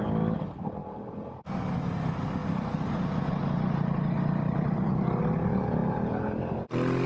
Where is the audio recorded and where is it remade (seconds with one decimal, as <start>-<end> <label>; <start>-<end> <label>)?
0.0-7.1 recorded